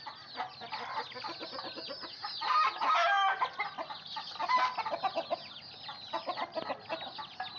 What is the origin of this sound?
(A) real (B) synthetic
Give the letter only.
A